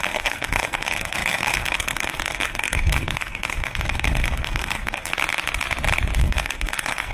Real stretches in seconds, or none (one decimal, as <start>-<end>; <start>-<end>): 5.1-6.2